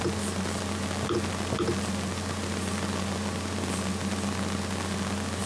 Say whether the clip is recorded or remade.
recorded